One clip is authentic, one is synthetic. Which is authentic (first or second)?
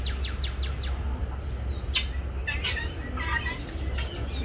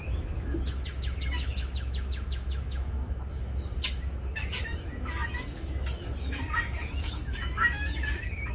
first